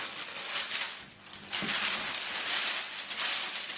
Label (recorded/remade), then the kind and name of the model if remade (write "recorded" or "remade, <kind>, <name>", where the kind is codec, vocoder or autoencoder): recorded